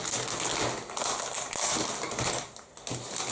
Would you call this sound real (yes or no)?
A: yes